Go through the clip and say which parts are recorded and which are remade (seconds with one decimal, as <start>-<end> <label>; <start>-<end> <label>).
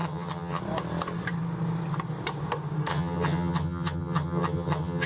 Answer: 0.0-0.6 remade; 0.6-2.9 recorded; 2.9-5.1 remade